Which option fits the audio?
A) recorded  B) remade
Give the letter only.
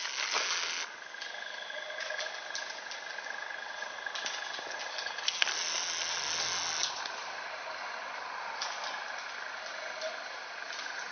A